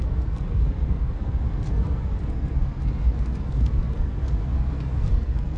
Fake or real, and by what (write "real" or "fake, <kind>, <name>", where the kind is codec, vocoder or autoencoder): fake, codec, SNAC